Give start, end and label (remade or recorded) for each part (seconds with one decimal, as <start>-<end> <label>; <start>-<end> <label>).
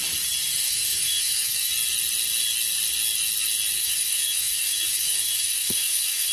0.0-0.6 recorded; 0.6-1.7 remade; 1.7-3.8 recorded; 3.8-6.3 remade